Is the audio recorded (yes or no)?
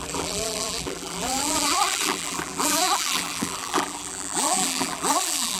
no